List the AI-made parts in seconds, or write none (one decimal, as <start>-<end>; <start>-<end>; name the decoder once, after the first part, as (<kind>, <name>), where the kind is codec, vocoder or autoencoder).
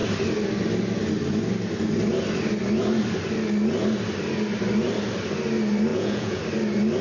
5.9-6.4 (vocoder, Vocos)